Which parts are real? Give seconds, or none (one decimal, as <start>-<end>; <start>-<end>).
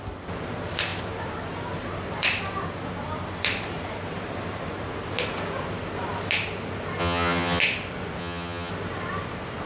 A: 0.0-7.0; 7.6-8.2; 8.7-9.7